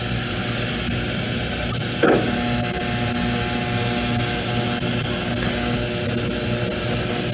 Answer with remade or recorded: recorded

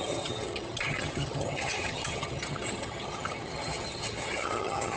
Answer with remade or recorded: remade